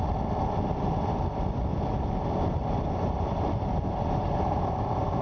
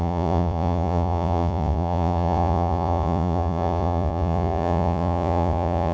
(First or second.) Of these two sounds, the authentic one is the first